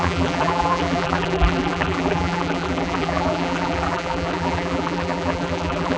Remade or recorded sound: remade